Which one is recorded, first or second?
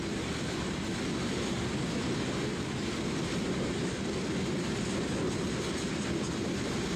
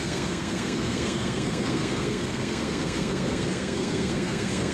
first